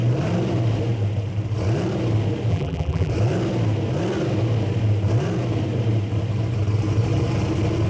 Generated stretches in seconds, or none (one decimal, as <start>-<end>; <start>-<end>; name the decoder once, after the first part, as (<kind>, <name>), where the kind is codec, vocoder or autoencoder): 2.5-3.1 (vocoder, BigVGAN v2)